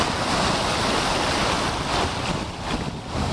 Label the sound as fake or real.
real